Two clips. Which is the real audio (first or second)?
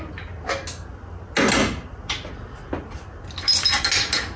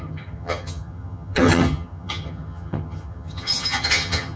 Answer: first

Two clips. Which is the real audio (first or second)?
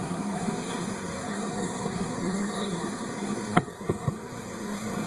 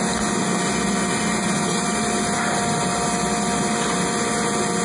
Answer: second